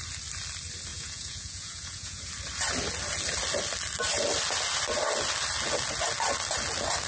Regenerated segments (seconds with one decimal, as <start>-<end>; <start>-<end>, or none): 0.9-2.3